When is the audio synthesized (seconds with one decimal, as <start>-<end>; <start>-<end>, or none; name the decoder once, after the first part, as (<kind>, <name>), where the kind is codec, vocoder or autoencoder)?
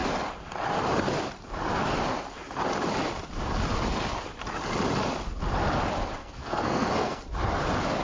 6.2-7.2 (codec, SNAC)